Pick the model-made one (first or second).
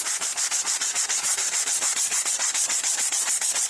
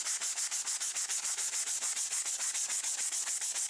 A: first